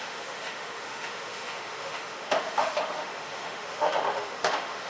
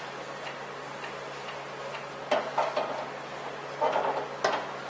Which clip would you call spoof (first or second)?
first